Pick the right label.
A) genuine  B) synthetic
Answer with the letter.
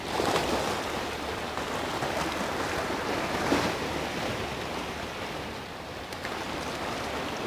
A